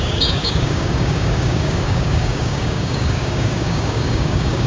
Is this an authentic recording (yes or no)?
no